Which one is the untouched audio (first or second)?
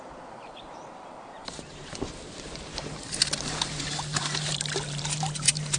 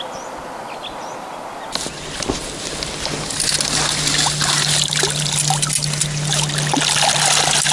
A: second